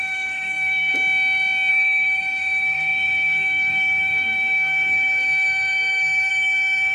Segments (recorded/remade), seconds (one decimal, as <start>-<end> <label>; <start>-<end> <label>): 0.0-0.9 remade; 0.9-1.7 recorded; 1.7-6.9 remade